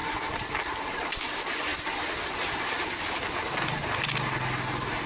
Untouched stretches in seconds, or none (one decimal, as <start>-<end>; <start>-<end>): 0.0-5.1